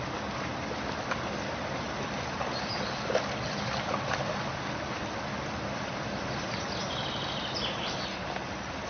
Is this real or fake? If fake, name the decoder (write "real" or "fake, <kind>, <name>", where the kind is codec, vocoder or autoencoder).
real